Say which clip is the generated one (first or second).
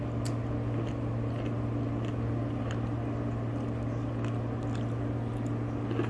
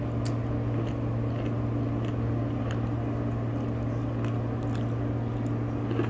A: first